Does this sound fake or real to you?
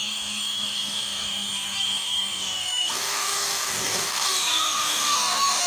fake